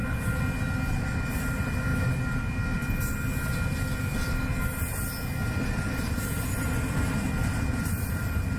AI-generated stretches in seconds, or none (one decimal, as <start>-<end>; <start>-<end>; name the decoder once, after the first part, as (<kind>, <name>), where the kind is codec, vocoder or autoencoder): none